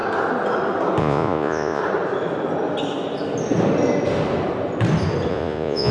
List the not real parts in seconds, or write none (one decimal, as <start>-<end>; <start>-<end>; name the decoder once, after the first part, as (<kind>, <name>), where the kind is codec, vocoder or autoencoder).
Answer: 1.0-1.8 (vocoder, Vocos); 5.3-5.9